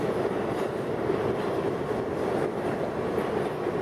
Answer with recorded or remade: recorded